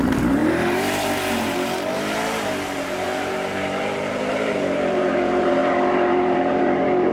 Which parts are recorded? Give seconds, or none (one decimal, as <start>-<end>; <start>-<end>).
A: none

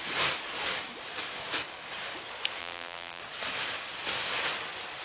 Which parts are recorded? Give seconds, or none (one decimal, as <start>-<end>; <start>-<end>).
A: 0.0-2.6; 3.2-5.0

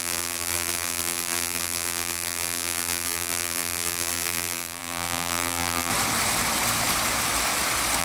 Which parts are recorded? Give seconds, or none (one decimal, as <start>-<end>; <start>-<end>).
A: 5.9-8.0